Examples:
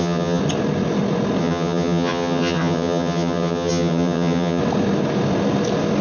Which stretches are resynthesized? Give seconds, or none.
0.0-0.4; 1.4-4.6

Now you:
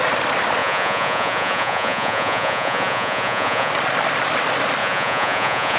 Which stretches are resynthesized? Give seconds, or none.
0.6-3.7; 4.8-5.8